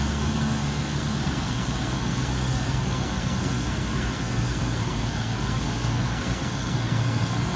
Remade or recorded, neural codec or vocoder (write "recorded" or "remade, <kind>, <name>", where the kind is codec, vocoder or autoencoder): remade, codec, SNAC